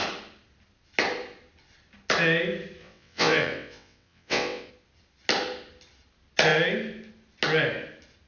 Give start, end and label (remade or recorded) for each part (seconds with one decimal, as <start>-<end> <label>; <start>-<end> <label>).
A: 0.0-2.8 recorded; 2.8-4.7 remade; 4.7-8.3 recorded

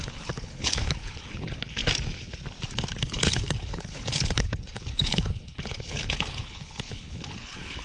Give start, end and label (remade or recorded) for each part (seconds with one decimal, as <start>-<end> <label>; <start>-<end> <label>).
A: 0.0-1.8 remade; 1.8-2.9 recorded; 2.9-7.8 remade

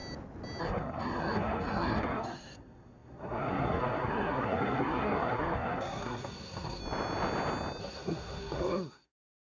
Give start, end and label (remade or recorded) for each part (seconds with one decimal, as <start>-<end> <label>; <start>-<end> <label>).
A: 0.0-0.6 recorded; 0.6-6.8 remade; 6.8-7.8 recorded; 7.8-9.6 remade

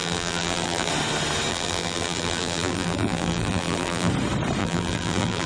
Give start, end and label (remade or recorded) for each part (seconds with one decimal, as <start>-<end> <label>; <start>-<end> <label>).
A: 0.0-0.9 remade; 0.9-1.5 recorded; 1.5-4.1 remade; 4.1-4.6 recorded; 4.6-5.5 remade

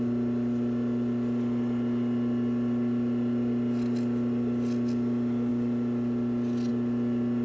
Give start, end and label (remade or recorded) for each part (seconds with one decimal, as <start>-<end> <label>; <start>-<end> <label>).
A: 0.0-7.4 recorded

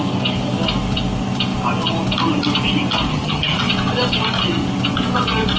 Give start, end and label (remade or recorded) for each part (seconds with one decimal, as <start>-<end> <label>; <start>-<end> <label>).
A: 0.0-3.1 recorded; 3.1-3.6 remade; 3.6-5.6 recorded

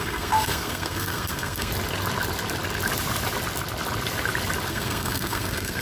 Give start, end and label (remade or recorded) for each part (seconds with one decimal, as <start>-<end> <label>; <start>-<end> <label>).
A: 0.0-1.7 remade; 1.7-4.7 recorded; 4.7-5.8 remade